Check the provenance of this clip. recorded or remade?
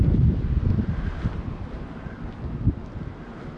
recorded